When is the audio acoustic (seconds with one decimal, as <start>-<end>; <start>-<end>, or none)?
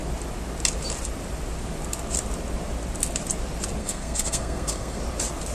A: 0.0-3.8; 5.0-5.5